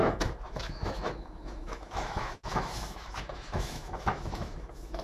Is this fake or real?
fake